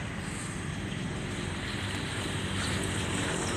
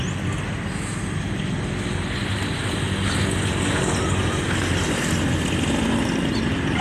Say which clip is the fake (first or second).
first